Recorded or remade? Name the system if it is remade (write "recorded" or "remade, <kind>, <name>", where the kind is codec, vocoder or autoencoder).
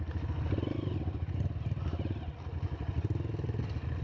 recorded